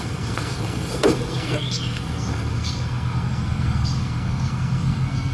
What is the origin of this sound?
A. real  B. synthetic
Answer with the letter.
B